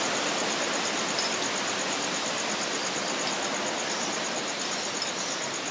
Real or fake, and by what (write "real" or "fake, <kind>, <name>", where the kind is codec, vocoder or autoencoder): real